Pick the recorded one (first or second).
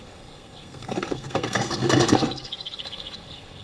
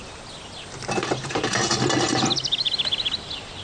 second